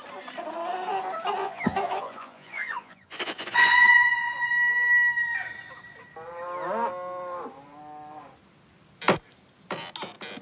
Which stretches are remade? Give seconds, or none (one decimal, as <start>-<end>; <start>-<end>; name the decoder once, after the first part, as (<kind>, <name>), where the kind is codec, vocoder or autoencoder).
1.4-4.5 (vocoder, Vocos)